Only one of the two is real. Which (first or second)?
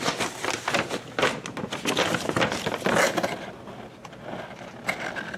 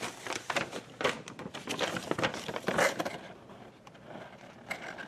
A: first